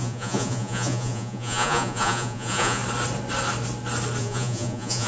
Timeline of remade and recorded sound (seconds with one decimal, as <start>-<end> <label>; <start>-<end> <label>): 0.0-2.8 remade; 2.8-4.2 recorded; 4.2-5.1 remade